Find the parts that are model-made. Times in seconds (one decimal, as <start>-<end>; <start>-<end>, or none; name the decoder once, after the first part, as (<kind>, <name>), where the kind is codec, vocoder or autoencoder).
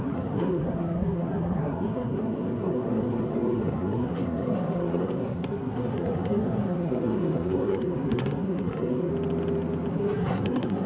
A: 0.0-9.1 (codec, SNAC); 9.9-10.9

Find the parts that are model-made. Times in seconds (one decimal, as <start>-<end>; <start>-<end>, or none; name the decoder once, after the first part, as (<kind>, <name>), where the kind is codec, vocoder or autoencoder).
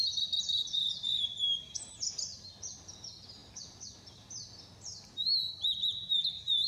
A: none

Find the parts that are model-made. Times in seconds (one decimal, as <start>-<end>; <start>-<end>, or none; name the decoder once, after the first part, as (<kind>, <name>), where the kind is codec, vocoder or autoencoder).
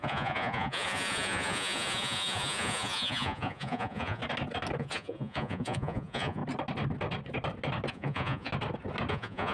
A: 0.0-4.2 (vocoder, Vocos); 4.8-6.4; 7.9-8.5; 9.1-9.5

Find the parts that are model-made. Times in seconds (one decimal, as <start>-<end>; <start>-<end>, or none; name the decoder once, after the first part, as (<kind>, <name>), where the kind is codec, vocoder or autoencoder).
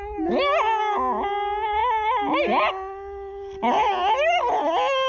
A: none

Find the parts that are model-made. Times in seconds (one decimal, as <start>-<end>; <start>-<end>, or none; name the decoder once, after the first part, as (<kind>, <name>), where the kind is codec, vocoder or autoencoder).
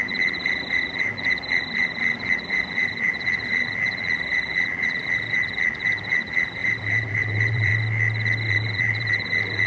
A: 0.0-7.7 (vocoder, BigVGAN v2); 8.5-9.7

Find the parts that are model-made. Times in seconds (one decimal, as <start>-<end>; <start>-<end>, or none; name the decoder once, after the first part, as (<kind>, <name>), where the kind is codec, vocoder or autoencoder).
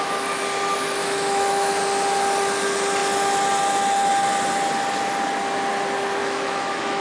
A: 1.0-1.7 (autoencoder, DAC-VAE); 6.2-7.0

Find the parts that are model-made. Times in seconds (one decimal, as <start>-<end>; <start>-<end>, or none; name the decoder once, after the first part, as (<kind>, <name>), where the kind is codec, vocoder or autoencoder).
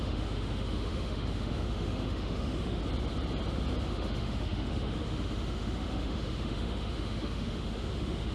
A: 0.0-2.8 (autoencoder, DAC-VAE); 3.9-8.3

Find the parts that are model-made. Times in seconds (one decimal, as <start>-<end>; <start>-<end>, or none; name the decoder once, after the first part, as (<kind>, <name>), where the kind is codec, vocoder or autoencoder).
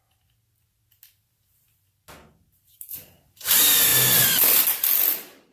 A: 2.9-3.5 (vocoder, BigVGAN v2)